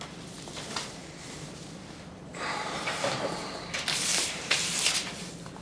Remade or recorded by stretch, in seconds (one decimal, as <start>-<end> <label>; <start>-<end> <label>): 0.0-2.3 recorded; 2.3-3.2 remade; 3.2-4.1 recorded; 4.1-5.6 remade